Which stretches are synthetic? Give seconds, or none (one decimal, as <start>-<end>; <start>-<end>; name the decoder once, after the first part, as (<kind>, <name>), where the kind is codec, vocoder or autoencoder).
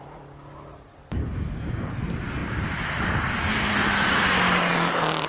1.2-1.9 (codec, DAC)